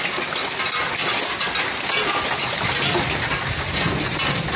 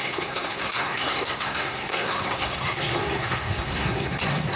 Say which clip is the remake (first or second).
second